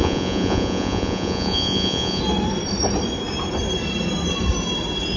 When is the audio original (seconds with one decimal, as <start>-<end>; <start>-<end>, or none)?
2.2-5.2